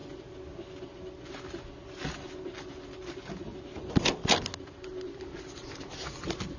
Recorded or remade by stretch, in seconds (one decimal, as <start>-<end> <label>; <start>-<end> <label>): 0.0-6.6 recorded